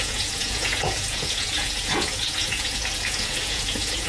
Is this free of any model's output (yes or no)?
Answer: no